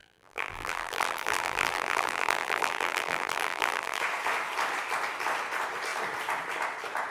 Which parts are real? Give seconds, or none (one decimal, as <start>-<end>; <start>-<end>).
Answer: 4.0-7.1